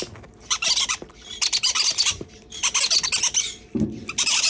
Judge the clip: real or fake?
real